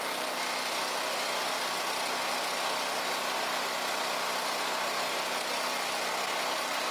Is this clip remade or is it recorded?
recorded